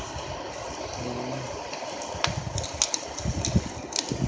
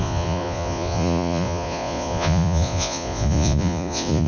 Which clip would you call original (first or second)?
first